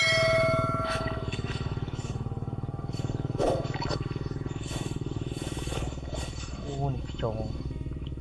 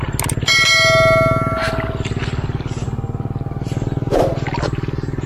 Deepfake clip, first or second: first